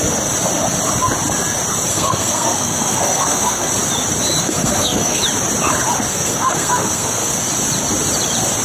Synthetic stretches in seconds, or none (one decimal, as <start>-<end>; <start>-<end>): 1.9-3.7; 4.4-5.2; 6.1-7.3